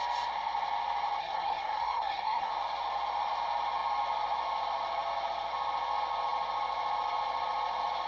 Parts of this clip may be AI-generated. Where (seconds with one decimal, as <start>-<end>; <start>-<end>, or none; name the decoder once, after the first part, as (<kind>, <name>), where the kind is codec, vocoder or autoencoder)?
1.2-2.5 (codec, SNAC)